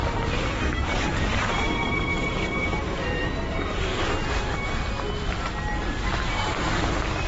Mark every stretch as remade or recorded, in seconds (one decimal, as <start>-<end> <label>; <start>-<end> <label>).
0.0-3.9 remade; 3.9-6.1 recorded; 6.1-7.3 remade